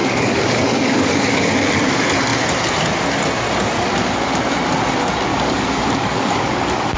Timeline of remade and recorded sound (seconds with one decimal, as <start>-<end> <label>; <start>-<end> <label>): 0.0-1.5 remade; 1.5-5.3 recorded; 5.3-7.0 remade